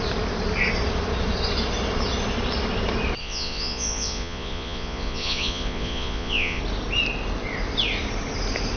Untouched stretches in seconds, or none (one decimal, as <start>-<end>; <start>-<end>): 0.0-3.2; 6.6-8.8